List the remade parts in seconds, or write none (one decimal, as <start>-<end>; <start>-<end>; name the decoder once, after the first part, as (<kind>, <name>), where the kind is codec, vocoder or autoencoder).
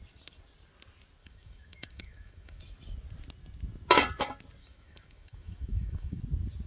1.2-2.6 (autoencoder, DAC-VAE); 4.6-6.2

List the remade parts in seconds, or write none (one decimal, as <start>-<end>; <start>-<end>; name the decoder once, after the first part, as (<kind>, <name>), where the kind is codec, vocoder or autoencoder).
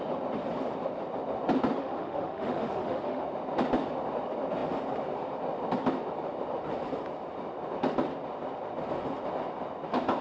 1.8-3.2 (autoencoder, DAC-VAE)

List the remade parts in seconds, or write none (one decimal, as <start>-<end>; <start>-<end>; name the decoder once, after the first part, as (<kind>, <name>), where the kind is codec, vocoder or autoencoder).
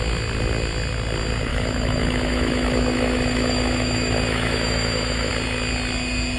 1.5-5.3 (autoencoder, DAC-VAE)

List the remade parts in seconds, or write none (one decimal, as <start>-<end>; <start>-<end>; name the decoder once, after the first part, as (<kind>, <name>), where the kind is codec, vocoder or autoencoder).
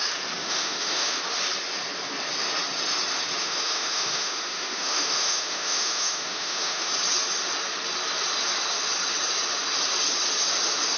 0.4-1.2 (autoencoder, DAC-VAE); 3.4-6.9